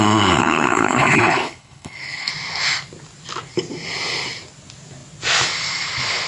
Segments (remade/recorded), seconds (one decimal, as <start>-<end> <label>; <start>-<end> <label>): 0.0-0.4 recorded; 0.4-2.3 remade; 2.3-6.3 recorded